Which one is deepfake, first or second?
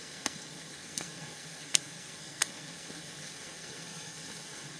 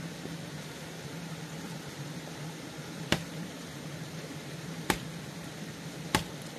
first